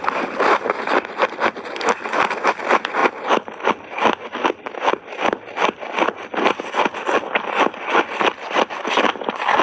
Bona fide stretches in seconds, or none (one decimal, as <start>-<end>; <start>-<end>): 0.0-9.6